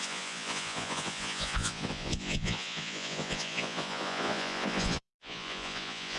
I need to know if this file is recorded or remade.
remade